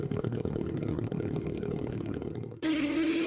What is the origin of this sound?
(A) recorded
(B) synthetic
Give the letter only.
B